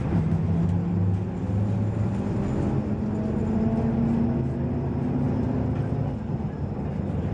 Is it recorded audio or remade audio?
recorded